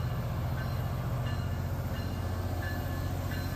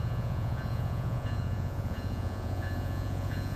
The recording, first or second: first